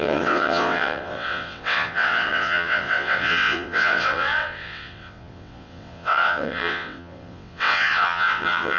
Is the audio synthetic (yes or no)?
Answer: yes